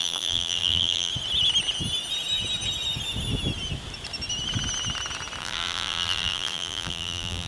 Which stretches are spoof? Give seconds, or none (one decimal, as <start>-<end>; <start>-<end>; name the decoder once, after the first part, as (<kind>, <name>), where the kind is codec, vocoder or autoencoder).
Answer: 0.0-1.1 (vocoder, BigVGAN v2); 5.4-7.5